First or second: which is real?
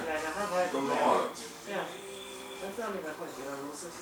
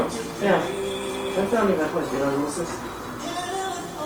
second